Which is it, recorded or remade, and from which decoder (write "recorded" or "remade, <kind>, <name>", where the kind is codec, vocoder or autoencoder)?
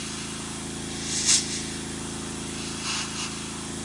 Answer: recorded